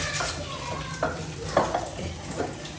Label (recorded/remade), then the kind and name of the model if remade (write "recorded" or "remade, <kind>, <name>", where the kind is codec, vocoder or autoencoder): recorded